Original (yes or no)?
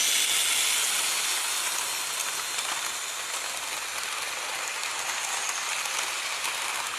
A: yes